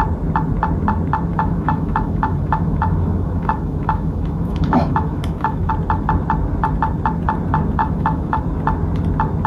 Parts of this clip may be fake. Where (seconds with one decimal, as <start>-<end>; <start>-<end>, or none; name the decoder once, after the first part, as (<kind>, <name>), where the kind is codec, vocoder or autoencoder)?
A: 1.3-5.7 (autoencoder, DAC-VAE); 7.8-8.4